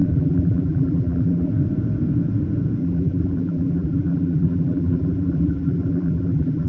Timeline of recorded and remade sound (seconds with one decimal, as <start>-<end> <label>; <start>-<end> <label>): 0.0-1.5 remade; 1.5-2.8 recorded; 2.8-6.7 remade